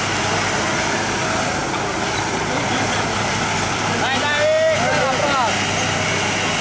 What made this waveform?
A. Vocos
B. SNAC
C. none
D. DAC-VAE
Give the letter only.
C